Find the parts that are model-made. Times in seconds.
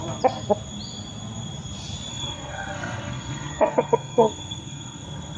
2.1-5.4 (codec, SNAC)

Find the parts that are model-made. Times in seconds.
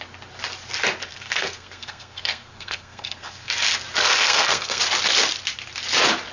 1.1-3.5 (codec, SNAC); 4.0-4.8